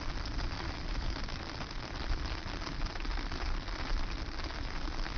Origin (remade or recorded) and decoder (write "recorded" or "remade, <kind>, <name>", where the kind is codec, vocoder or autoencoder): recorded